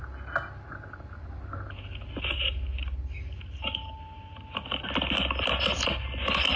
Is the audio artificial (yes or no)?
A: no